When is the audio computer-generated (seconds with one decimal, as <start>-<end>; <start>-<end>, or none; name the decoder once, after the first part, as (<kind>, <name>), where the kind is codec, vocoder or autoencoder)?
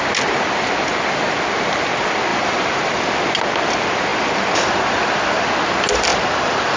2.3-3.2 (vocoder, BigVGAN v2); 4.1-5.5; 6.1-6.8